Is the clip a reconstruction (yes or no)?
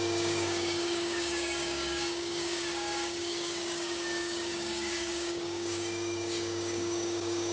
yes